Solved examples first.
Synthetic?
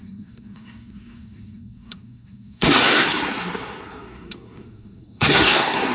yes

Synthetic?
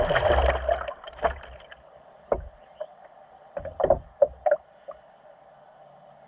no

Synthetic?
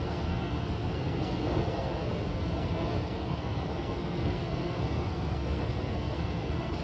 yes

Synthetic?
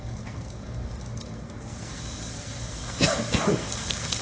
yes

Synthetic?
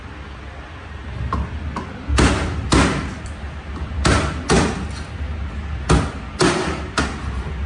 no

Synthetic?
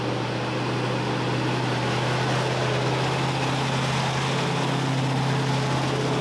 no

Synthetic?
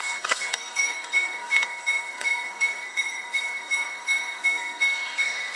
yes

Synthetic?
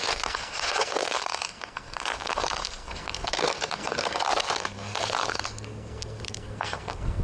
yes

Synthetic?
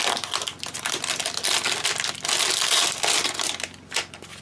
no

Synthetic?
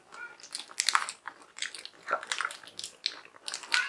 no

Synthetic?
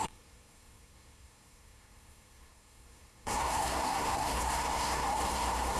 yes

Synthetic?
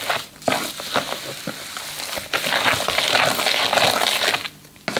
no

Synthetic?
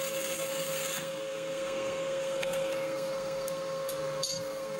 yes